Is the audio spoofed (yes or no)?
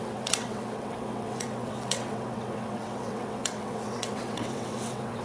yes